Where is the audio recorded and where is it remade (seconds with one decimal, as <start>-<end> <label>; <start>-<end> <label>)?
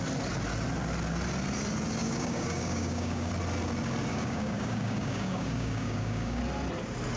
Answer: 0.0-2.0 recorded; 2.0-3.3 remade; 3.3-4.1 recorded; 4.1-6.4 remade; 6.4-7.2 recorded